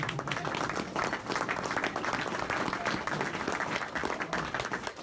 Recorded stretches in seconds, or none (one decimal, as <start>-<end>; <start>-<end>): 0.0-5.0